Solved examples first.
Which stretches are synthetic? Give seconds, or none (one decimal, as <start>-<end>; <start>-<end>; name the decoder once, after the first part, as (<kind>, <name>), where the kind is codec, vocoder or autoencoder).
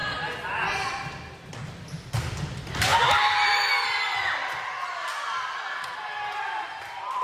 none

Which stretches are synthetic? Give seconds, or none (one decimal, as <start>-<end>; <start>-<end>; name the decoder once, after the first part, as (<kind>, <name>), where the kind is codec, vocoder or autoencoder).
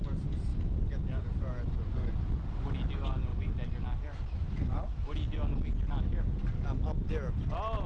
none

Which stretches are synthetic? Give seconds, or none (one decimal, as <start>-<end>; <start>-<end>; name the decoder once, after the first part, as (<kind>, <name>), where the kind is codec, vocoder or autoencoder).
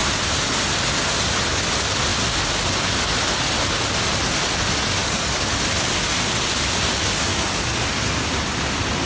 5.0-5.6 (codec, DAC); 7.3-8.0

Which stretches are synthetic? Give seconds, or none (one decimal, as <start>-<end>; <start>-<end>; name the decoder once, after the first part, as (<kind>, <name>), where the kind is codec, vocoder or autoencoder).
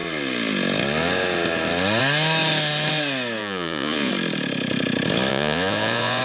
3.4-4.1 (vocoder, Vocos); 5.3-6.2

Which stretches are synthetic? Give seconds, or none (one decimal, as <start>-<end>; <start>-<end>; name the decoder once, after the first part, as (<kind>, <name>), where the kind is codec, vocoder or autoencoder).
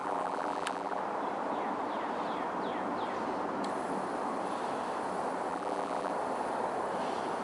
0.0-1.0 (vocoder, BigVGAN v2); 5.5-6.1